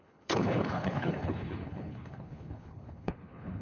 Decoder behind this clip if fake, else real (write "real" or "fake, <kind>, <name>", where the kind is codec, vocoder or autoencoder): fake, codec, HILCodec